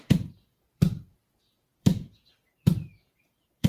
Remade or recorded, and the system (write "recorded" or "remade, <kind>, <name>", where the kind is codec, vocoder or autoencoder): remade, vocoder, Vocos